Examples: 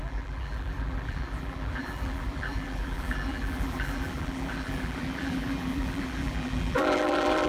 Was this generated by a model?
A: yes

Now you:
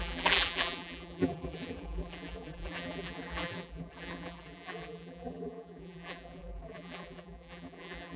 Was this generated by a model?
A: yes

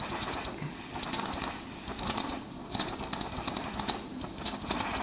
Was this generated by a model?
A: yes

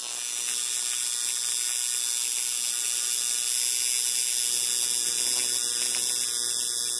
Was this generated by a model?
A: no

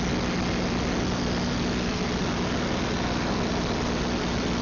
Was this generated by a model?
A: no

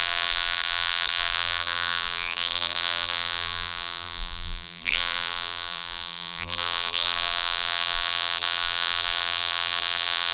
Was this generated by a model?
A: yes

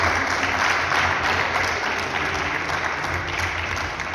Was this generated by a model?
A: no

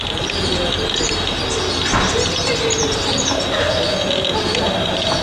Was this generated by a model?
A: no